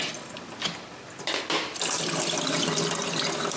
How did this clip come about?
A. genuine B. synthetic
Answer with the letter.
A